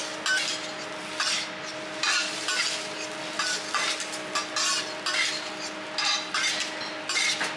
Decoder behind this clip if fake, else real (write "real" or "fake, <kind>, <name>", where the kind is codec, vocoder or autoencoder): real